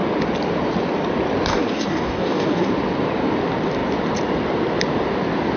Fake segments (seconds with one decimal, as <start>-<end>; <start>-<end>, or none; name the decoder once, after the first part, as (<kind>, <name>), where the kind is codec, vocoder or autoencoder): 1.5-2.7 (codec, DAC)